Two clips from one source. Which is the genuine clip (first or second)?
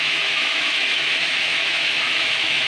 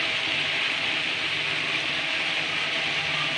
second